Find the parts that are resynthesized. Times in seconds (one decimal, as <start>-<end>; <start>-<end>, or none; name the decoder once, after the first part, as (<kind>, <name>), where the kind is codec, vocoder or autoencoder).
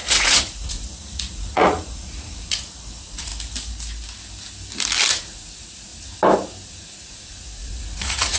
0.0-3.3 (vocoder, Vocos); 5.1-5.9; 6.7-8.4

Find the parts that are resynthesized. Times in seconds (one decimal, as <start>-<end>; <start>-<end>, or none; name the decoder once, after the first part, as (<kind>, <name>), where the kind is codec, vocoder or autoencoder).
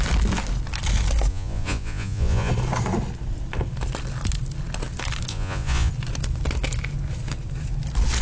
1.3-2.5 (vocoder, Vocos); 5.3-5.9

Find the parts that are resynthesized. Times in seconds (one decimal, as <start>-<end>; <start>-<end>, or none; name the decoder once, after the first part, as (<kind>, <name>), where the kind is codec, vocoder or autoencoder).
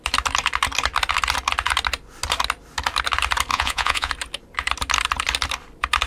3.5-4.1 (vocoder, Vocos)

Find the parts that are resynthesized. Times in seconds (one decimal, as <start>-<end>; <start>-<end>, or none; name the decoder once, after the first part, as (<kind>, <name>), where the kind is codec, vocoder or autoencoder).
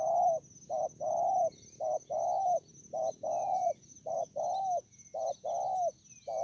3.4-4.4 (vocoder, Vocos)